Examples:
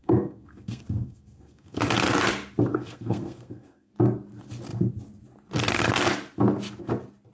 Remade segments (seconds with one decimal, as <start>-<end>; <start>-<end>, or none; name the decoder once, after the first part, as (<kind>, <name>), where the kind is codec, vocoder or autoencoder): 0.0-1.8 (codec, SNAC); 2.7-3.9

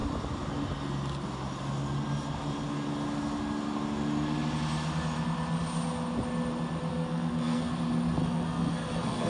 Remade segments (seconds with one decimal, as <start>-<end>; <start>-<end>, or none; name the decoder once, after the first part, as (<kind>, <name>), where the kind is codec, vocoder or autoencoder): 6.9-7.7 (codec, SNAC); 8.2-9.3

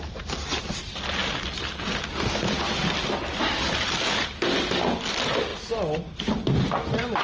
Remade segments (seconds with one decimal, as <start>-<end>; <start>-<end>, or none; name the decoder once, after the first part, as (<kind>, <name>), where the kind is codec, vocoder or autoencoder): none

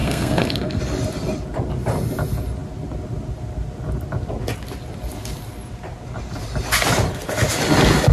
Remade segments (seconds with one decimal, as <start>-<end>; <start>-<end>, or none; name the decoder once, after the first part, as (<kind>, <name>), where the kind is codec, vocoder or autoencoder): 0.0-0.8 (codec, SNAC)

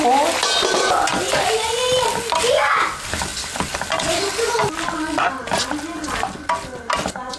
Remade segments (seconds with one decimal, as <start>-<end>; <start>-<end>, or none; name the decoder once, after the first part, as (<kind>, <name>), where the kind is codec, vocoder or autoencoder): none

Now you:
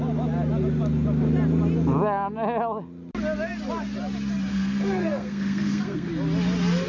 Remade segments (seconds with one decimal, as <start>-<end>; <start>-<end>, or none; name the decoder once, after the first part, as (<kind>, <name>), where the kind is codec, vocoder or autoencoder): 4.5-6.1 (codec, SNAC)